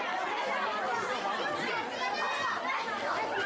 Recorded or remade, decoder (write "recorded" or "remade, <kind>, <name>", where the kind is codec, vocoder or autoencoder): recorded